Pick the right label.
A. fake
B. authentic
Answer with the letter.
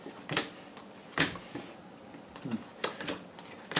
B